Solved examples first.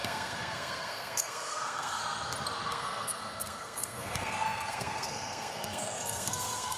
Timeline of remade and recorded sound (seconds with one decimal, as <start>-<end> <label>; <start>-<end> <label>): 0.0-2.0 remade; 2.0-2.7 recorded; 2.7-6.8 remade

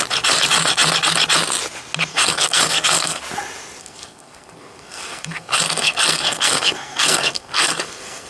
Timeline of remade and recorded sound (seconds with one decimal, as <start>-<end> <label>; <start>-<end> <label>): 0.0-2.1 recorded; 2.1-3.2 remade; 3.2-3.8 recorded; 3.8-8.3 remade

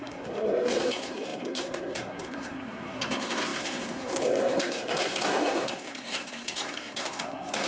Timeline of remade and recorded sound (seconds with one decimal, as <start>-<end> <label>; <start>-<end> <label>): 0.0-7.7 remade

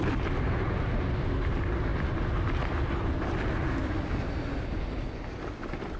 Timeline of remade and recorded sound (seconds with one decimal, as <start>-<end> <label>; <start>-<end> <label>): 0.0-6.0 recorded

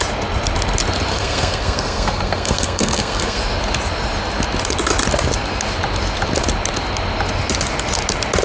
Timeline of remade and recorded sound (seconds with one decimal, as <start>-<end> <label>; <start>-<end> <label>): 0.0-1.1 recorded; 1.1-3.4 remade; 3.4-8.4 recorded